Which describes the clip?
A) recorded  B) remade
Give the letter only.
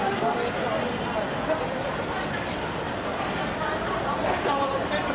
A